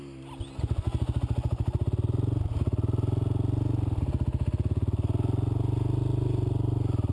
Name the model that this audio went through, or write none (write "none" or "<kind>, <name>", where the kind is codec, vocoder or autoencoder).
none